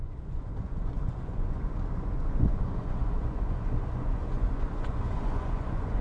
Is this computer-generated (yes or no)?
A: yes